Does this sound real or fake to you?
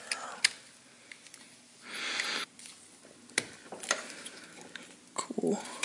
real